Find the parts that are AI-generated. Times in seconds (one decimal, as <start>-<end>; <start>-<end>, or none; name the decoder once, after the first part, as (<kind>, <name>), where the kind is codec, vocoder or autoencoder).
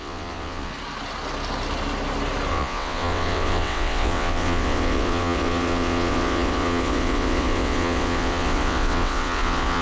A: 0.0-0.7 (vocoder, WaveNeXt); 2.5-9.8